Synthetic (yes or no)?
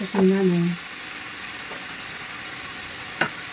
no